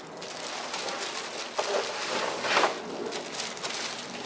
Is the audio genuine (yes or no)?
yes